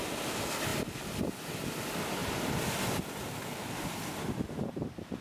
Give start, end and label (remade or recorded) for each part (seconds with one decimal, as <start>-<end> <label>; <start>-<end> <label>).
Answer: 0.0-5.2 recorded